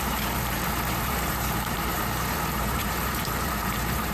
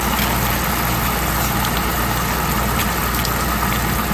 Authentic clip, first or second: second